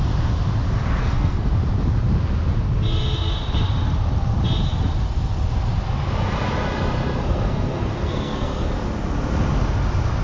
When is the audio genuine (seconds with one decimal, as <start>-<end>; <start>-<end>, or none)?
0.0-1.0; 1.5-7.2; 8.7-10.2